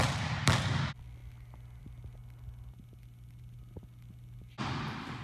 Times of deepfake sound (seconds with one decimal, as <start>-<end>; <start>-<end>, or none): 0.0-1.2; 1.8-2.2